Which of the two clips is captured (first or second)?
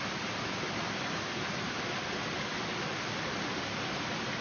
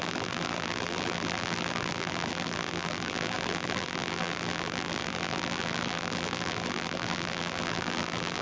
first